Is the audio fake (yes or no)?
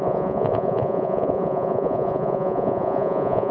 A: yes